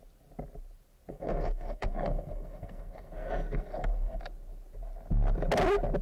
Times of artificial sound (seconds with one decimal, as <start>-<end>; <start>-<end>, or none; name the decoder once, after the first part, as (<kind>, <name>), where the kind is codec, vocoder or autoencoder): 1.1-4.2 (codec, SNAC)